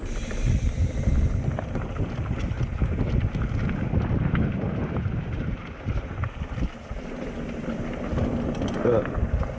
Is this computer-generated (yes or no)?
no